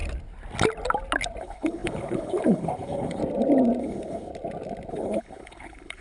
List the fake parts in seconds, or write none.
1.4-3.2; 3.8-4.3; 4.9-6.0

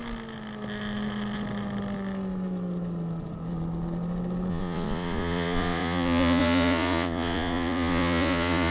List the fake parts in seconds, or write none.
4.5-8.7

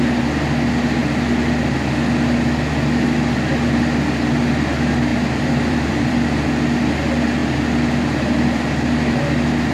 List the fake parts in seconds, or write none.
5.1-6.5

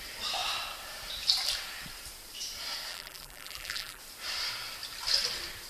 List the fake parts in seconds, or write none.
2.9-4.0